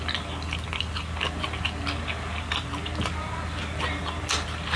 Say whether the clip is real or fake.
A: real